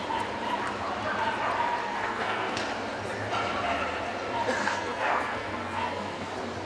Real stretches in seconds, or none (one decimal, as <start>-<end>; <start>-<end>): 0.0-1.8; 2.6-4.6; 6.3-6.7